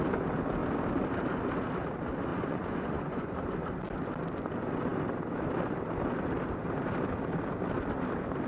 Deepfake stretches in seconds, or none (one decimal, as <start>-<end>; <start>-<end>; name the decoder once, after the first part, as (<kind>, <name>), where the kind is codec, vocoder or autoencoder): 2.3-3.4 (vocoder, Vocos)